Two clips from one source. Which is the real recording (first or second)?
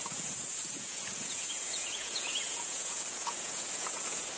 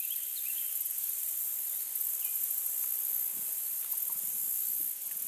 second